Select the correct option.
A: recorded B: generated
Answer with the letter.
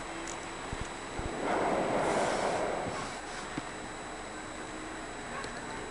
A